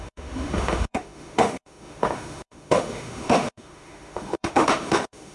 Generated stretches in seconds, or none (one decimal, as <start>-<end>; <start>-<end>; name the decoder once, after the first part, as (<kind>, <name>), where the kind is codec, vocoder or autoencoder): 0.0-5.3 (autoencoder, DAC-VAE)